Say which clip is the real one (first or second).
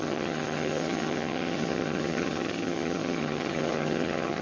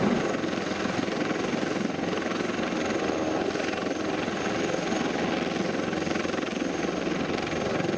second